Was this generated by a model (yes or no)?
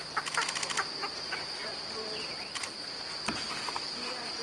no